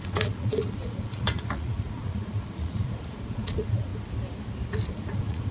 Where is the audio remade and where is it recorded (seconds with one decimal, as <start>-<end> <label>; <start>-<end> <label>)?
0.0-3.9 remade; 3.9-4.9 recorded; 4.9-5.5 remade